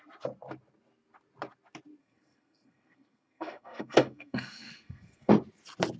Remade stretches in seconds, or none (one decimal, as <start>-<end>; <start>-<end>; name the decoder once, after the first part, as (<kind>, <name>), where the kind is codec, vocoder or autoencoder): 2.0-5.3 (codec, SNAC)